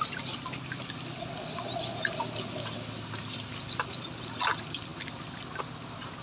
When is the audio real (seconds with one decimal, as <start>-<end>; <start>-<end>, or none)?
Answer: 0.0-6.2